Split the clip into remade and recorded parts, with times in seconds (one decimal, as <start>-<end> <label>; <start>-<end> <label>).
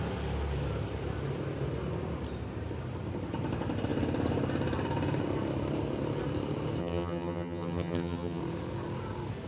0.0-6.8 recorded; 6.8-8.4 remade; 8.4-9.5 recorded